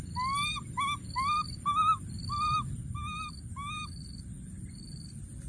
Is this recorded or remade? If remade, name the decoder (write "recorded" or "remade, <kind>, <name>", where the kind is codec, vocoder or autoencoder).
recorded